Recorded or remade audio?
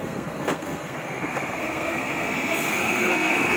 remade